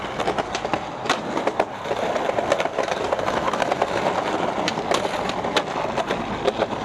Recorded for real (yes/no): yes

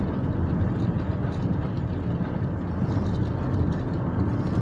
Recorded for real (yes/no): yes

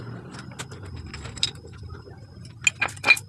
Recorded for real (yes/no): yes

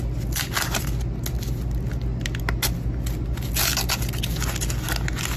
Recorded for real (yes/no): yes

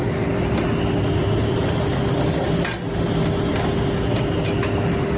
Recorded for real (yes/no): yes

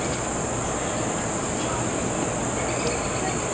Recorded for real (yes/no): yes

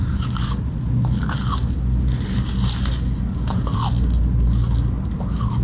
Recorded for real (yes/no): yes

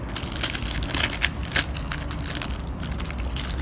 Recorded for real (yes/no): yes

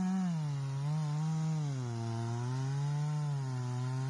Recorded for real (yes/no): yes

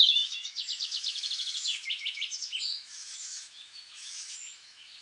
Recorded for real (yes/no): no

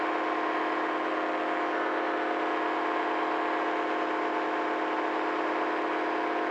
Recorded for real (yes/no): yes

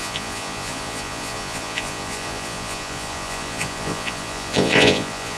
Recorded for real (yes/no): no